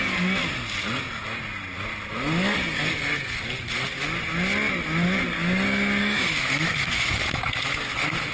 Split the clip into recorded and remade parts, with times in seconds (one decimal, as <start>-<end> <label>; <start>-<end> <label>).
0.0-6.0 recorded; 6.0-8.3 remade